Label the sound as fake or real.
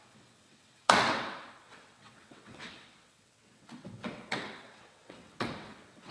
fake